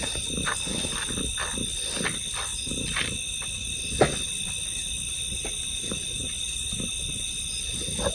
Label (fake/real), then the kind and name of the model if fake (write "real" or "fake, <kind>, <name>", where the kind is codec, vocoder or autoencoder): real